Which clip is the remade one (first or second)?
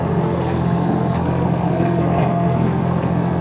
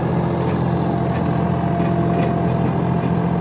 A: first